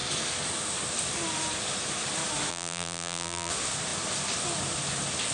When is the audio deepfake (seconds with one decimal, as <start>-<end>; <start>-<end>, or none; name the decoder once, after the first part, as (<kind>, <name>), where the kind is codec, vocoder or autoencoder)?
2.5-3.5 (vocoder, BigVGAN v2)